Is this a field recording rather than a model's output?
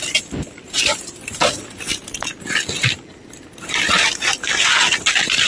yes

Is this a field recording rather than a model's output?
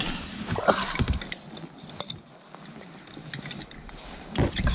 yes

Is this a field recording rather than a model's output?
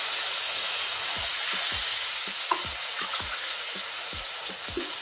no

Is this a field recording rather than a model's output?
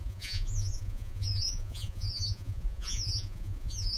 no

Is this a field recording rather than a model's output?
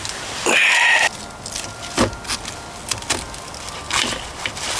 yes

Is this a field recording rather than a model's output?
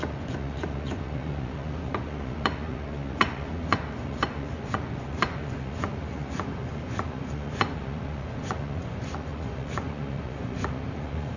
no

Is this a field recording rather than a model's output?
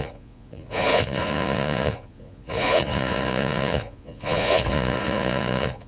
no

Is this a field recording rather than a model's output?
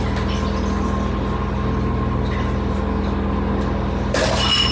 yes